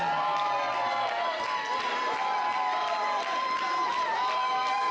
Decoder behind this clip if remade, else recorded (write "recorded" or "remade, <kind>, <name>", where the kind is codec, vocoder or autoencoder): remade, vocoder, BigVGAN v2